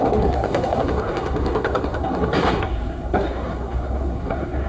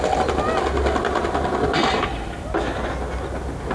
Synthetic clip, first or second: first